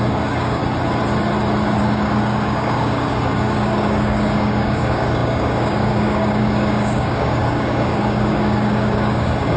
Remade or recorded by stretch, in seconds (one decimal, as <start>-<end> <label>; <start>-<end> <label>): 0.0-0.6 remade; 0.6-1.8 recorded; 1.8-9.6 remade